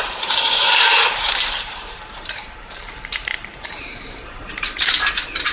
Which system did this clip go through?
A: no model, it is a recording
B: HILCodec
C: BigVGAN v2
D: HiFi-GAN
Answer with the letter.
C